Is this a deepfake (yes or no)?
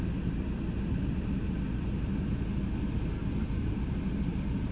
no